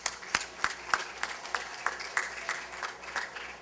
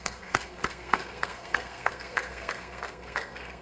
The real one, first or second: first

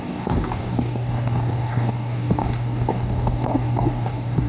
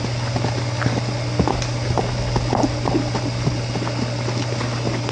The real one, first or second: second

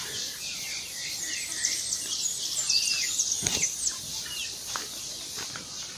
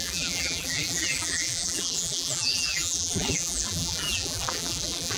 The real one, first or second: first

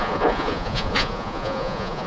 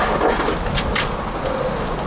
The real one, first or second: second